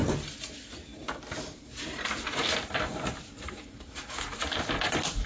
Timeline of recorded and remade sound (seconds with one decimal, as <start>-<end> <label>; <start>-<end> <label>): 0.0-5.3 recorded